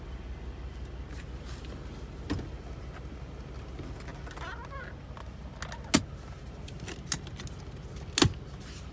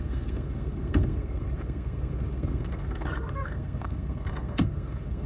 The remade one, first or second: second